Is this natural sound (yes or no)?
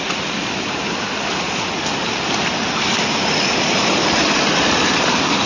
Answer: no